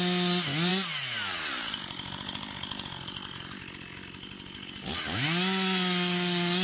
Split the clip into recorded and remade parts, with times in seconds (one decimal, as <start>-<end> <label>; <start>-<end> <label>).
0.0-6.6 recorded